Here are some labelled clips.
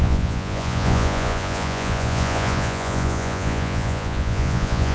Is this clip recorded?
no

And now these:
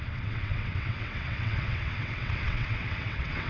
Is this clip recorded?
no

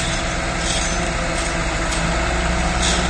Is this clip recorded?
yes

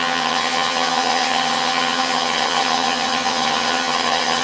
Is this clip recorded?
no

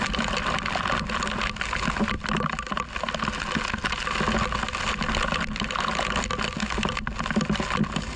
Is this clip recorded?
yes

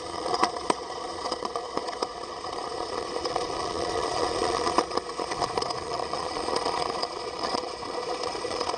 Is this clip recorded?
no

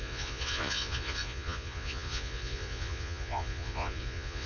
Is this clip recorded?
no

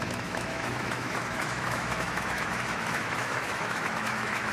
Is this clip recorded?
no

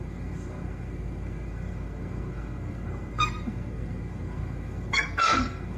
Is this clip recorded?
no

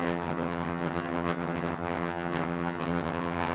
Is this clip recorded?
no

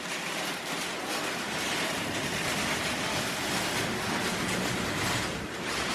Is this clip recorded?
yes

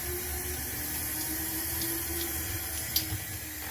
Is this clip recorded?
yes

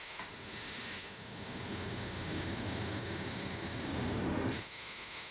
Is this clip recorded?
no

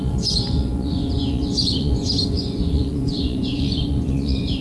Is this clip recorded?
no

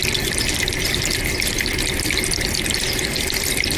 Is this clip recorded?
yes